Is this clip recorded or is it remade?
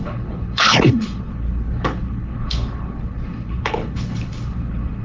remade